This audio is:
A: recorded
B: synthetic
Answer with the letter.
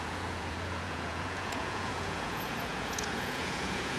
B